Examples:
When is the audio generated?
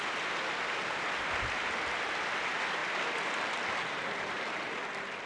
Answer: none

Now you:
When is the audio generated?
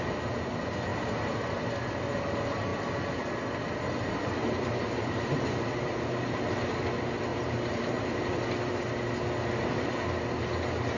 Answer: 4.4-6.5 (vocoder, BigVGAN v2); 7.3-8.2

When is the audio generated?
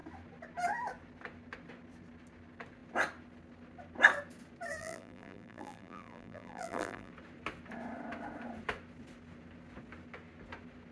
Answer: 4.8-7.1 (vocoder, BigVGAN v2)